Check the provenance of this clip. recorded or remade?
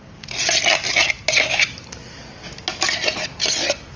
recorded